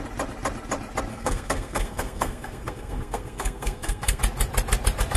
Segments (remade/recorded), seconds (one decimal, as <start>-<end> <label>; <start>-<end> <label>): 0.0-1.1 recorded; 1.1-4.2 remade; 4.2-5.2 recorded